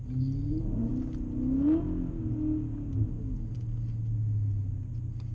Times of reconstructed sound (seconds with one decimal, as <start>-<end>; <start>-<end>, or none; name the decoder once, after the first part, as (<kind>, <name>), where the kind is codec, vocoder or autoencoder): none